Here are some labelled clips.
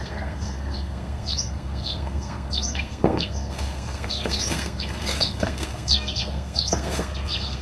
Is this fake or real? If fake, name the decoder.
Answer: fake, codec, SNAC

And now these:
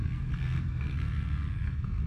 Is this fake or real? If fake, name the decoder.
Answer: fake, codec, SNAC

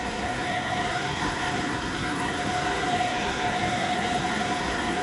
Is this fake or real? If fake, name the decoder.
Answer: fake, codec, SNAC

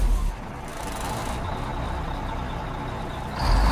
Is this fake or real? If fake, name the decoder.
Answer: real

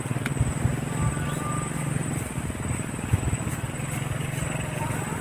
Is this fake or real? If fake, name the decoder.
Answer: real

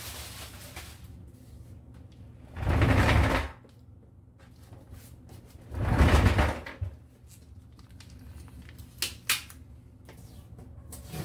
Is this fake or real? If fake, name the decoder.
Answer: real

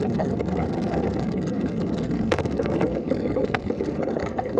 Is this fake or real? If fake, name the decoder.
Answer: fake, codec, SNAC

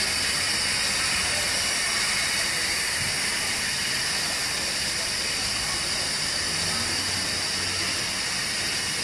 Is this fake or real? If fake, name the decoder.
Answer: real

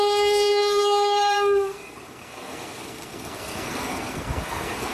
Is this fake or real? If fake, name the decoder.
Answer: fake, codec, SNAC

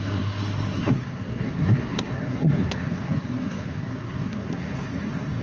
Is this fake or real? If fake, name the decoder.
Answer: fake, codec, SNAC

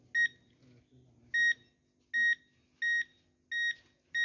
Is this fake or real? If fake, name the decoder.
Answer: real